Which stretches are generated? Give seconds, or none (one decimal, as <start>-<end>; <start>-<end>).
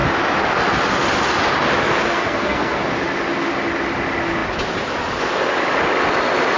2.1-2.8